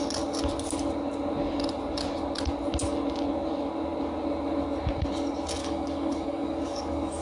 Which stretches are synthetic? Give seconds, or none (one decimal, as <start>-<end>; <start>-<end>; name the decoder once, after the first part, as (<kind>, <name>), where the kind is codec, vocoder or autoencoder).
5.6-7.2 (codec, DAC)